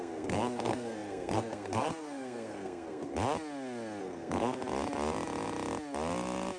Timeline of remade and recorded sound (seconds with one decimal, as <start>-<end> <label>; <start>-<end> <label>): 0.0-3.1 remade; 3.1-4.0 recorded; 4.0-4.6 remade; 4.6-6.6 recorded